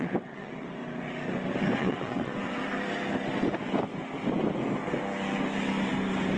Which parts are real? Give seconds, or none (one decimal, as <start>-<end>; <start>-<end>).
0.8-1.8; 2.6-6.4